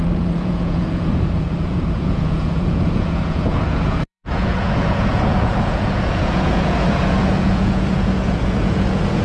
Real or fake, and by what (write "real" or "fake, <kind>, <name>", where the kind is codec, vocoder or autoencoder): fake, vocoder, Vocos